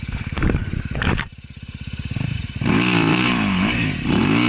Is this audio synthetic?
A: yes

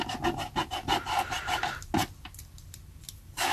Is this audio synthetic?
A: no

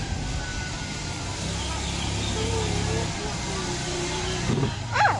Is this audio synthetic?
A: no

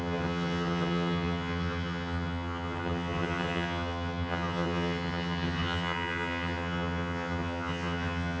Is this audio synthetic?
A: yes